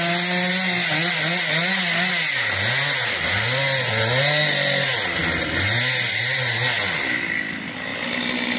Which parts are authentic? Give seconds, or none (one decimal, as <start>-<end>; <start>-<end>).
0.0-8.6